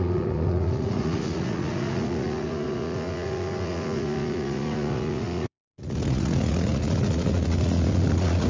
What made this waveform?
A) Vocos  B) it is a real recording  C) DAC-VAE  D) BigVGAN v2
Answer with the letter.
A